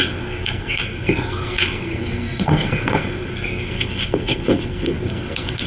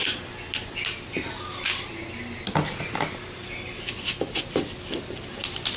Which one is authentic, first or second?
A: second